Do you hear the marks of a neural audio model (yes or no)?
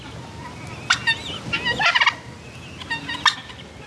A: no